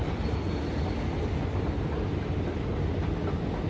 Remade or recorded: recorded